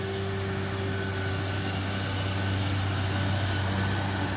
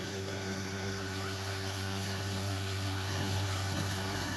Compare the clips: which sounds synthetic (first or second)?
second